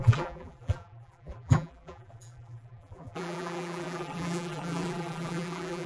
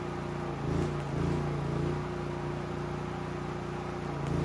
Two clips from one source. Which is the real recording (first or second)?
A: second